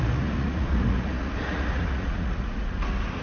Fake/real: fake